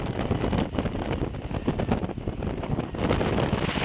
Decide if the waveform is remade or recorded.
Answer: recorded